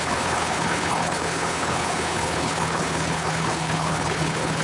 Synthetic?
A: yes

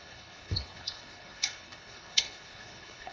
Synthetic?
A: yes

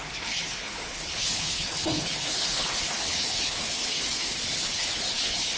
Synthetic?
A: yes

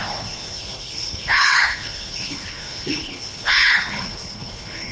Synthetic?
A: yes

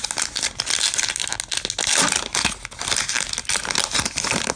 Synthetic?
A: no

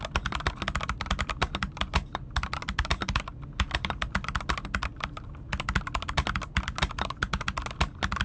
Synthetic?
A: no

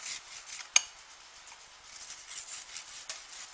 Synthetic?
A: no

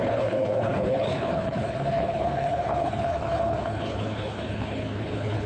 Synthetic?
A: yes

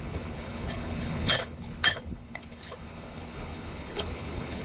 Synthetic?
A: yes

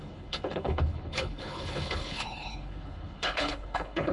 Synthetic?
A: yes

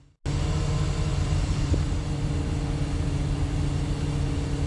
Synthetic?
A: no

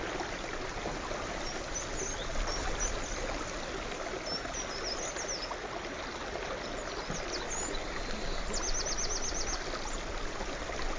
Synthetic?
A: no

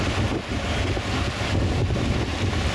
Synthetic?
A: no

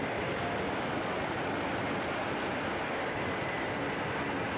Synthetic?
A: no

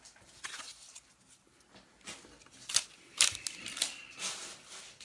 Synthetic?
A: no